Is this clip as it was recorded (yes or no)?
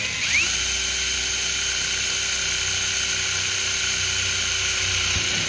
yes